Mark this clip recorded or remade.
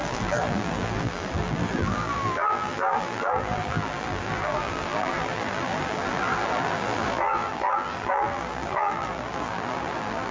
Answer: remade